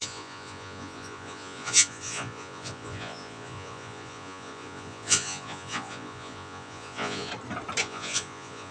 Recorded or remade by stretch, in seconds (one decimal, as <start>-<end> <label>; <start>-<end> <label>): 0.0-7.3 remade; 7.3-7.8 recorded; 7.8-8.7 remade